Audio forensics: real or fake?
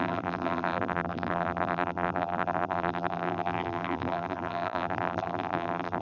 fake